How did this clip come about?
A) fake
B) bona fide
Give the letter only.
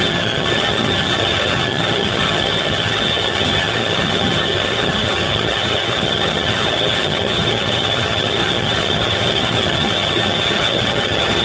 A